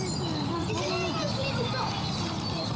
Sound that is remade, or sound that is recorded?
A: recorded